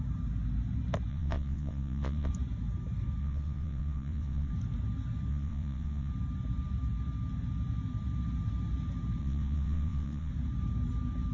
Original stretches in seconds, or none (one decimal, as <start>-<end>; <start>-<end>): 0.0-1.1; 2.3-3.2; 4.5-5.3; 6.1-9.2; 10.3-11.3